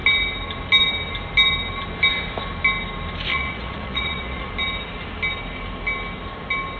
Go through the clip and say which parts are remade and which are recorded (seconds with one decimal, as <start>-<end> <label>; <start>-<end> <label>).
0.0-3.3 recorded; 3.3-4.5 remade; 4.5-6.8 recorded